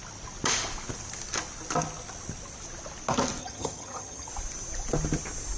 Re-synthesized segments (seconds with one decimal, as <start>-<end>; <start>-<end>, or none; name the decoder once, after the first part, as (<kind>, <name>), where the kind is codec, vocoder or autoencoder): 3.4-4.3 (vocoder, HiFi-GAN)